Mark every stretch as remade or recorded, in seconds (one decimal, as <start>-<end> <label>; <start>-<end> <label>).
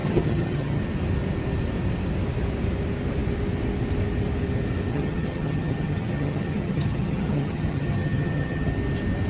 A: 0.0-0.8 remade; 0.8-4.9 recorded; 4.9-8.7 remade; 8.7-9.3 recorded